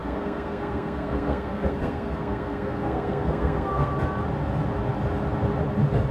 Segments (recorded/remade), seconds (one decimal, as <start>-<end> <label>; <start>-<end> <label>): 0.0-3.9 remade; 3.9-6.1 recorded